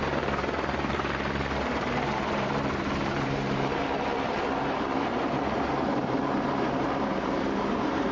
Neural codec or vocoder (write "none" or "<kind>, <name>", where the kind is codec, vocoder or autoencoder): vocoder, BigVGAN v2